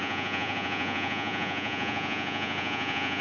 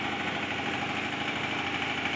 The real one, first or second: second